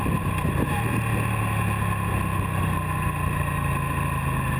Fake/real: real